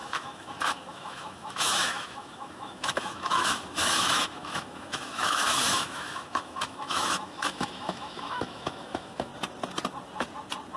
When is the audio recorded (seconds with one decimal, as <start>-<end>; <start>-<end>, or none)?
9.3-10.8